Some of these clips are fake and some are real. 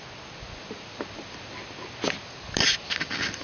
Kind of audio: real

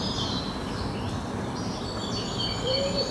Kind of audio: real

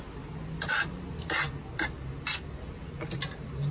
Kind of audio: real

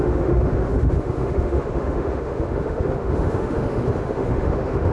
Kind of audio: fake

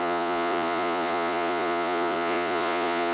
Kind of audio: fake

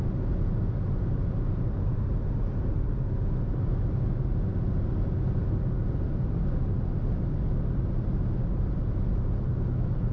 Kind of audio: real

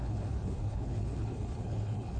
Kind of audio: fake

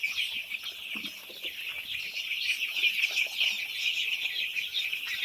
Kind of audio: real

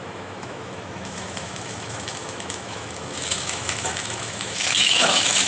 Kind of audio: fake